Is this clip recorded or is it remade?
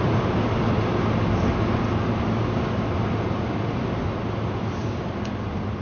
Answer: recorded